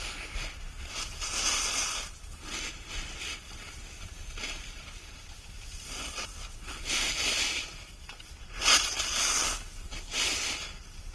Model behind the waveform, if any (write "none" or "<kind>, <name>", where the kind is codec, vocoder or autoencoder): none